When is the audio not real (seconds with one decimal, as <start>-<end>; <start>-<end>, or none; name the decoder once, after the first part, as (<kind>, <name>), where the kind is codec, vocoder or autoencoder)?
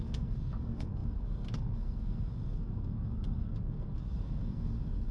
0.0-5.1 (codec, SNAC)